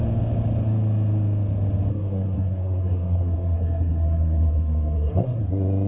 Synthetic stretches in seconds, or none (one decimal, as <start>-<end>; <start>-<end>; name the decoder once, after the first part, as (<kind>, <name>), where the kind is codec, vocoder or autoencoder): 1.9-5.4 (codec, SNAC)